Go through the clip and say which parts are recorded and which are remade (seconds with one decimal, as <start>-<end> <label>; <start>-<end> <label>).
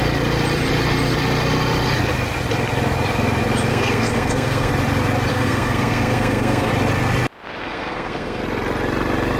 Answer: 0.0-3.7 recorded; 3.7-4.7 remade; 4.7-5.3 recorded; 5.3-6.7 remade; 6.7-7.6 recorded; 7.6-8.4 remade; 8.4-9.4 recorded